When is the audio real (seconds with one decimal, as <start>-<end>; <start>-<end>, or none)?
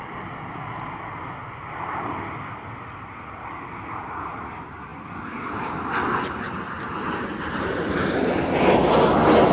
0.0-9.5